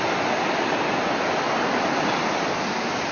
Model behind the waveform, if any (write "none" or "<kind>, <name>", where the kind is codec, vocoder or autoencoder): none